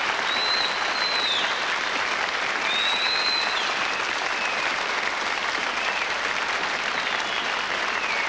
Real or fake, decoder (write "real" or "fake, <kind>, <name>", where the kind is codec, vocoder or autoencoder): real